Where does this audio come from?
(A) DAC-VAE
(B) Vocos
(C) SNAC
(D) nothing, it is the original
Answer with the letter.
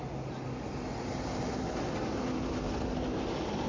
D